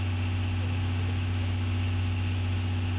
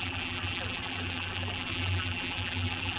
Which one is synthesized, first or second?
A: second